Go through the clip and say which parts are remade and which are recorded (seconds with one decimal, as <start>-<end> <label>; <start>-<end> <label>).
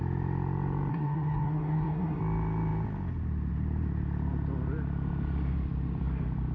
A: 0.0-0.9 recorded; 0.9-2.2 remade; 2.2-6.5 recorded